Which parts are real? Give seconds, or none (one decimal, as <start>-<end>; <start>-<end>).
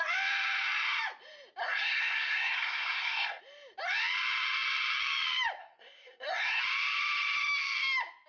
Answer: 0.0-1.6; 3.4-5.6; 6.6-8.3